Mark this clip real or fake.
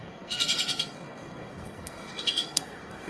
fake